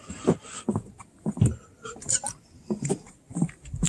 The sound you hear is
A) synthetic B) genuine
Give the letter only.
B